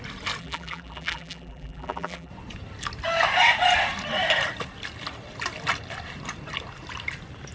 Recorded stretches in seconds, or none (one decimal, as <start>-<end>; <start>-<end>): 0.0-0.4; 2.3-7.5